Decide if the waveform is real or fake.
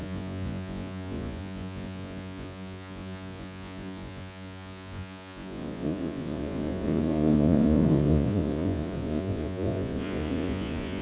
fake